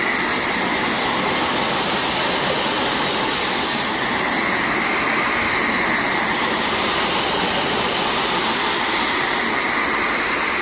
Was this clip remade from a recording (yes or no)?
no